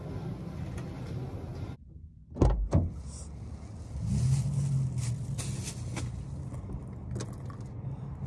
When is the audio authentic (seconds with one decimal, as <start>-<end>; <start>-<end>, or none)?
0.0-8.3

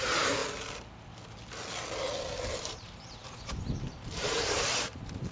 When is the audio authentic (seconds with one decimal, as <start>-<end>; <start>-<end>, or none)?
0.4-2.6